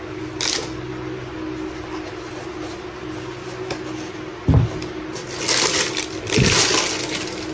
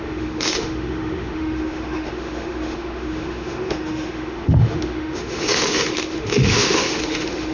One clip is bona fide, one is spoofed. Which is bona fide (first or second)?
first